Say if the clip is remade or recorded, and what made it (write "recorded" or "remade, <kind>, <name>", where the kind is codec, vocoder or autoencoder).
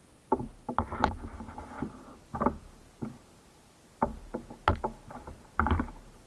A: recorded